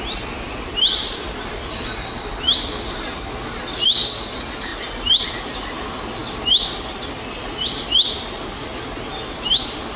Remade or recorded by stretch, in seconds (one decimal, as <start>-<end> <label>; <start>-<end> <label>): 0.0-10.0 recorded